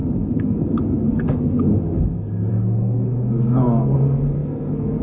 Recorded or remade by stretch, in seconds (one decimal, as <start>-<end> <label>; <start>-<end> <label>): 0.0-5.0 remade